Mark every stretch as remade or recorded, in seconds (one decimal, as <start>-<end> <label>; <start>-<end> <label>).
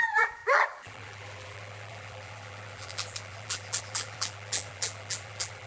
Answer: 0.0-5.7 remade